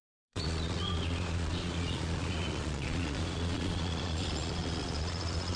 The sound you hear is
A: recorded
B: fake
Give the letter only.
B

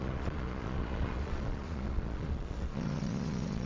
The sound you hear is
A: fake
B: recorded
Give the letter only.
A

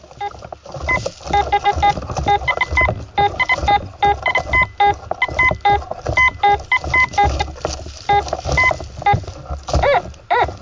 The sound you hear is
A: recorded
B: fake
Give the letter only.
A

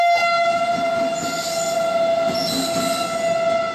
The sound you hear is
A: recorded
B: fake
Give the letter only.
A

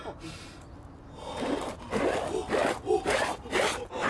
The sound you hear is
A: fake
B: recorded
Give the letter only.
B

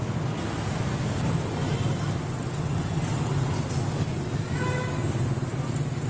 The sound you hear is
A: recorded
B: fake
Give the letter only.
A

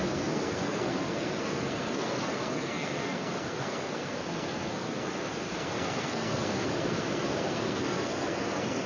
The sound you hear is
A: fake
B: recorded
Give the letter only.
A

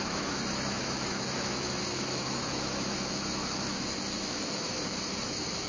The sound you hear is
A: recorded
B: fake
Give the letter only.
B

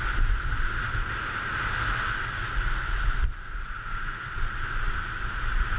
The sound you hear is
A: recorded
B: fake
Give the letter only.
A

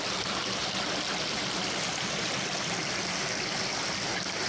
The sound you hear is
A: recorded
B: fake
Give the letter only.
A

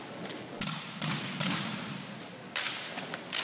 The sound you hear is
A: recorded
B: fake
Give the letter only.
A